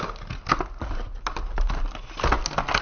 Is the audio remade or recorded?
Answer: recorded